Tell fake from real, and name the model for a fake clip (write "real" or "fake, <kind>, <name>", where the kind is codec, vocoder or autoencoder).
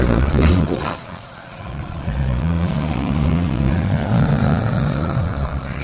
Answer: fake, vocoder, Vocos